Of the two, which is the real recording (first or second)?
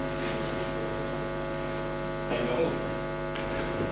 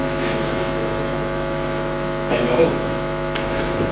first